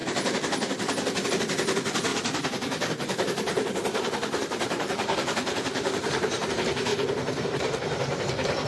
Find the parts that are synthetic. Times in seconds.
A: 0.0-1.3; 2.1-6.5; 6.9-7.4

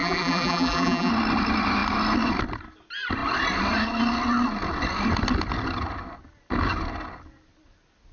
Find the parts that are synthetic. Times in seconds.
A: 0.0-1.1